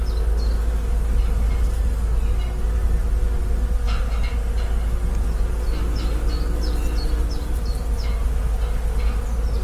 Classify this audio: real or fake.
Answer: real